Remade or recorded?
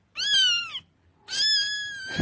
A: recorded